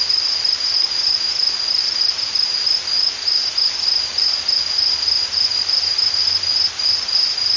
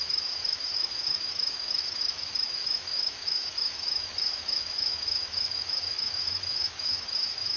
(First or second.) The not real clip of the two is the second